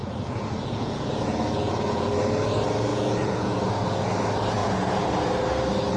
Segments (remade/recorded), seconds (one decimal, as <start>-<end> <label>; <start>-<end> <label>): 0.0-2.2 remade; 2.2-2.9 recorded; 2.9-3.6 remade; 3.6-4.6 recorded; 4.6-5.3 remade; 5.3-6.0 recorded